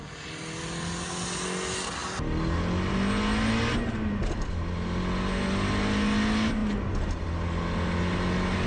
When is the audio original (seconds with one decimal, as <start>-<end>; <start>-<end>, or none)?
0.0-8.7